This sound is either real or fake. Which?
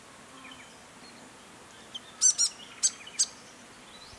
real